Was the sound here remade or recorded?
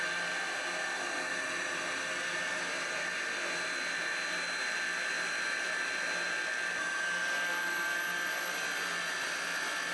recorded